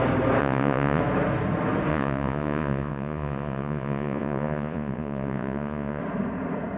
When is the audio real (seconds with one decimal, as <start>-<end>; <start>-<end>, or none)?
0.0-0.4; 1.0-1.9; 6.0-6.8

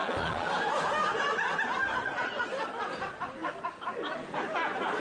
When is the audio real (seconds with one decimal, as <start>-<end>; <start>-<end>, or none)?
0.5-2.0; 2.5-5.0